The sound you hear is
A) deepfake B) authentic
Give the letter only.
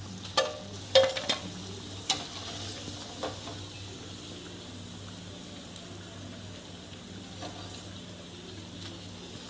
B